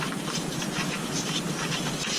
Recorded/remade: remade